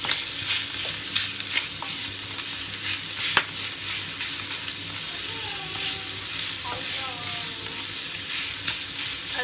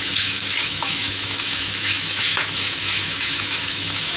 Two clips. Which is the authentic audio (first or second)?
first